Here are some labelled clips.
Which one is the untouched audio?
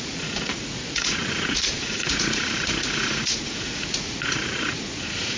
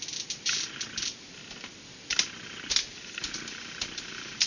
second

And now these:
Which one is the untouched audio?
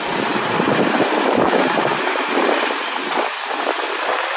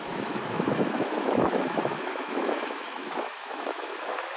first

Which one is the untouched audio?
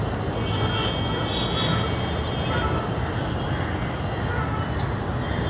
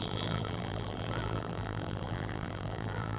first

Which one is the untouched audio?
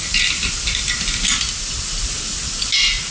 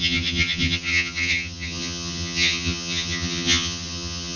first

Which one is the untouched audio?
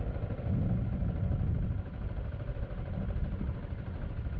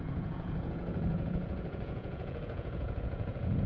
first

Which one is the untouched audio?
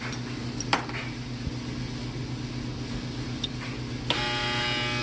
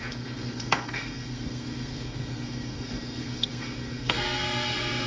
first